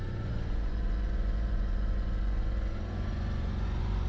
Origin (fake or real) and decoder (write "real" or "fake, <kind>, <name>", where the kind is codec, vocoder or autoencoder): fake, vocoder, Vocos